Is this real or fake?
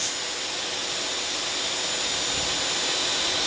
real